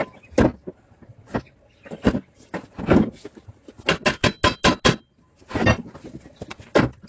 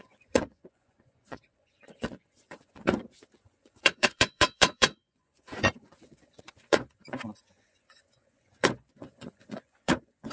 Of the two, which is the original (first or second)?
first